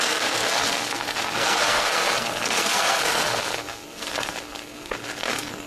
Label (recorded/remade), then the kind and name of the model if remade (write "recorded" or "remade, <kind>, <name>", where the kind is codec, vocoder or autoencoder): remade, codec, SNAC